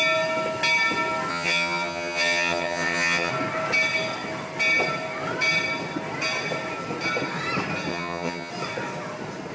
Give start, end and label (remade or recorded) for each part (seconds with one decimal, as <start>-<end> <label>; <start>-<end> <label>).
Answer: 0.0-1.3 recorded; 1.3-3.3 remade; 3.3-7.9 recorded; 7.9-8.5 remade; 8.5-9.5 recorded